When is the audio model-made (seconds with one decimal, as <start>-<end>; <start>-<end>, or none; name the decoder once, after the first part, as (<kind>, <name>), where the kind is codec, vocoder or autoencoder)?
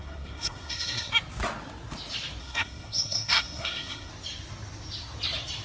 0.0-1.1 (codec, SNAC); 2.4-4.1